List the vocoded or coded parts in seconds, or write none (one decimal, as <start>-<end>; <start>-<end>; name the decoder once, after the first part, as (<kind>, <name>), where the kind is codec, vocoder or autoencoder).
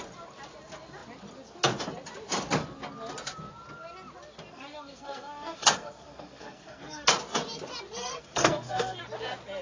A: 4.5-7.1 (codec, SNAC); 8.0-9.0